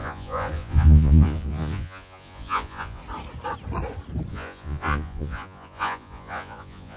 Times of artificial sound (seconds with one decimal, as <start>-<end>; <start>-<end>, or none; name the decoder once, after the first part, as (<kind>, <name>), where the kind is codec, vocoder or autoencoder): 0.0-3.0 (vocoder, Vocos); 4.3-7.0